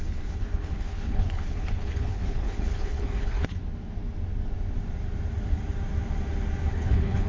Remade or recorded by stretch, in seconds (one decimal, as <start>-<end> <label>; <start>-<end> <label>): 0.0-3.6 remade; 3.6-6.7 recorded; 6.7-7.3 remade